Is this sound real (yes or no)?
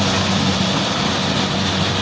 yes